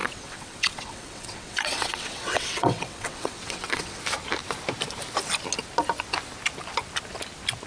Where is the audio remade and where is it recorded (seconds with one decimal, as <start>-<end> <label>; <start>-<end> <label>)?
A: 0.0-4.0 remade; 4.0-7.7 recorded

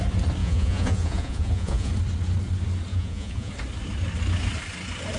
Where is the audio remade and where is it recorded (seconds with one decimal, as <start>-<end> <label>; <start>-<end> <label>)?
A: 0.0-0.4 recorded; 0.4-1.9 remade; 1.9-2.9 recorded; 2.9-3.5 remade; 3.5-5.2 recorded

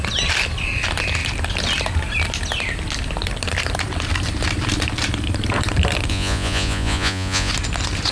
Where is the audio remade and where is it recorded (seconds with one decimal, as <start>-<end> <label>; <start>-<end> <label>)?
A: 0.0-6.1 recorded; 6.1-7.5 remade; 7.5-8.1 recorded

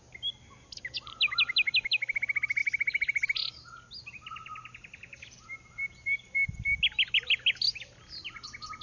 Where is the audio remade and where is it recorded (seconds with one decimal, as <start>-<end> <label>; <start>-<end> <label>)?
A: 0.0-8.8 recorded

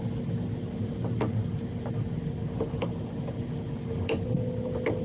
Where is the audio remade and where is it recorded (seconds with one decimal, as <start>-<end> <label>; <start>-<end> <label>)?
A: 0.0-5.0 recorded

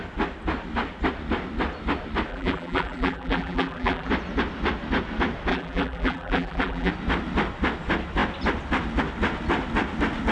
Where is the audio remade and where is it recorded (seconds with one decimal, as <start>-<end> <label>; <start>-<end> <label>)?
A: 0.0-2.3 recorded; 2.3-4.1 remade; 4.1-5.5 recorded; 5.5-6.9 remade; 6.9-10.3 recorded

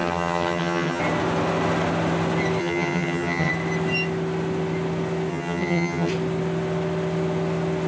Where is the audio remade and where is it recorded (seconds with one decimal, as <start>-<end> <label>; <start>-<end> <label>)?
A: 0.0-1.0 remade; 1.0-2.6 recorded; 2.6-3.5 remade; 3.5-5.3 recorded; 5.3-6.1 remade; 6.1-7.9 recorded

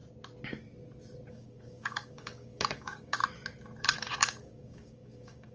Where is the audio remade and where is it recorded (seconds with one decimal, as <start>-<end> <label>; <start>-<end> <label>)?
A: 0.0-1.3 recorded; 1.3-3.2 remade; 3.2-3.8 recorded; 3.8-5.5 remade